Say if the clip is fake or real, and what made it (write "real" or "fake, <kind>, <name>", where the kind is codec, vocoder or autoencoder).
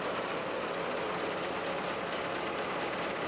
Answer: real